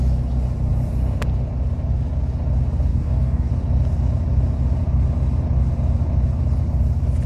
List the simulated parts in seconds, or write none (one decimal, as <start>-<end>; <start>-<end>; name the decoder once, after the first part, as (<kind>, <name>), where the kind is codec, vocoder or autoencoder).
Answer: 2.9-3.5 (codec, DAC)